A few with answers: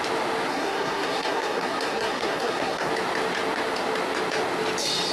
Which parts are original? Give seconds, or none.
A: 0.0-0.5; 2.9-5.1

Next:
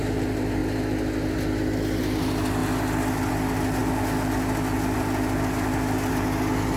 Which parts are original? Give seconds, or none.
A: 0.0-6.8

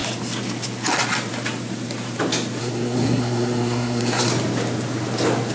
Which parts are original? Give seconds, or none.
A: 0.0-2.6; 4.3-5.5

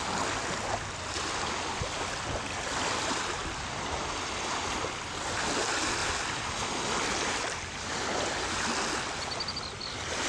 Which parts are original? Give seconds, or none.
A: 0.0-10.3